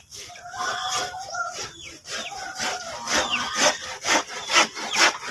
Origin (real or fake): fake